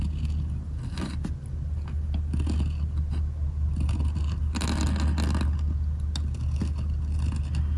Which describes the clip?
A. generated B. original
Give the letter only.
B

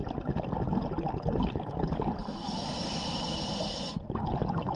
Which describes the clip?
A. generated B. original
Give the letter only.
B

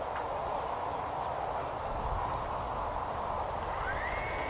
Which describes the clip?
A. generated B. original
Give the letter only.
B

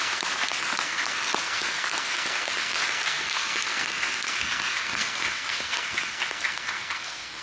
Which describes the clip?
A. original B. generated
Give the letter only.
B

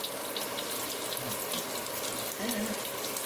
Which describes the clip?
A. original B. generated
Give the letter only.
A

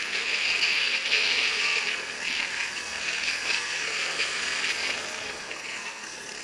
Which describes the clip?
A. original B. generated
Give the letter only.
B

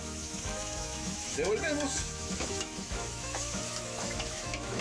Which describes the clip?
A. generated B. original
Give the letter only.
A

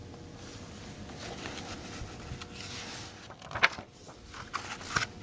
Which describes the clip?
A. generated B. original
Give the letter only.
B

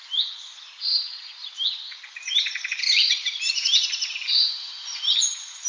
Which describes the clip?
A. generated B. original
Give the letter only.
A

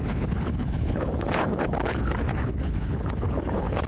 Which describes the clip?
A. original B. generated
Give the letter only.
B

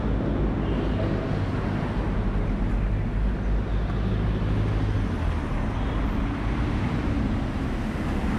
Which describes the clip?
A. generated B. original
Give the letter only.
B